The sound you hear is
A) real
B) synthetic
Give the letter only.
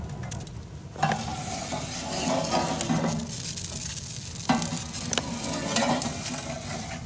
A